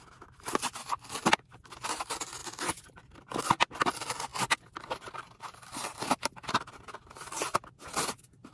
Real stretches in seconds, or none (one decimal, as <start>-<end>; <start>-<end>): 0.0-8.5